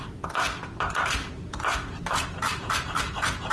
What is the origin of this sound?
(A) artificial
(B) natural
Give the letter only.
B